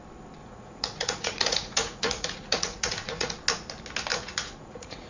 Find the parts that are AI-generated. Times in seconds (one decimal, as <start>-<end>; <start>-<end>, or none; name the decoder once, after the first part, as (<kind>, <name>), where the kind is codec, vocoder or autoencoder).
0.4-3.3 (vocoder, Vocos); 4.1-5.1